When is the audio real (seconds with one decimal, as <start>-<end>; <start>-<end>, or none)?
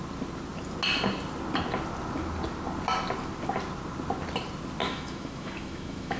0.0-4.8